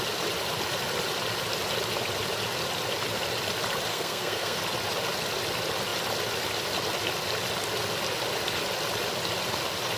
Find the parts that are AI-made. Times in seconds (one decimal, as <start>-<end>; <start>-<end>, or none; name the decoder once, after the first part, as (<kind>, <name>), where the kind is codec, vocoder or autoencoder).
3.9-4.6 (codec, SNAC)